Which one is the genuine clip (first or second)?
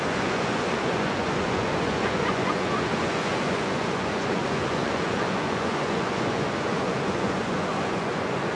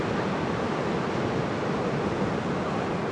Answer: second